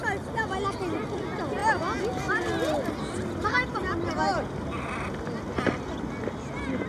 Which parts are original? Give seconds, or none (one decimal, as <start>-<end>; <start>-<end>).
0.0-6.9